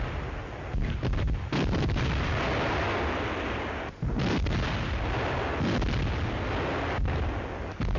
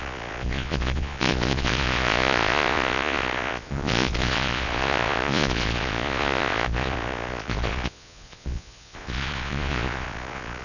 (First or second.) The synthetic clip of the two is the second